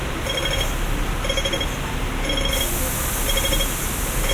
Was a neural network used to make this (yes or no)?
no